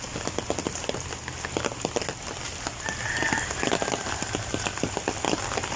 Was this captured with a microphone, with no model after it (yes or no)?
yes